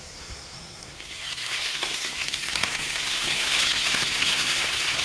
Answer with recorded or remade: remade